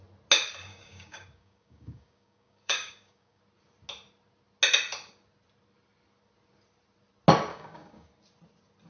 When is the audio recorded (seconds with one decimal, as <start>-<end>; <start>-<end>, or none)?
0.0-0.7; 3.4-7.5; 8.1-8.9